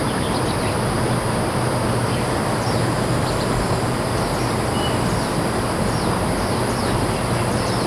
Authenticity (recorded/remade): recorded